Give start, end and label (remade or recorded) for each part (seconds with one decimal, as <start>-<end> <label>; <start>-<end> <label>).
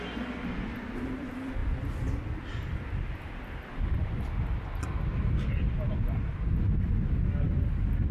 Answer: 0.0-8.1 recorded